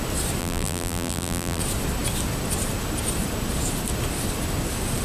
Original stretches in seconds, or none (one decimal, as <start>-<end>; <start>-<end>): 0.0-0.4; 1.6-5.0